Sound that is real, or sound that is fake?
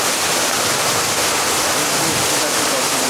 real